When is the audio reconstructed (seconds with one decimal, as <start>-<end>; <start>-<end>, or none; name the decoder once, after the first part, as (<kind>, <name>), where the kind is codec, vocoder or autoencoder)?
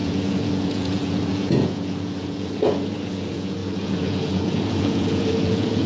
0.0-5.9 (vocoder, Vocos)